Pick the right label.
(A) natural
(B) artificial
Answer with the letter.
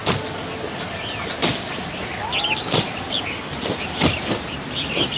A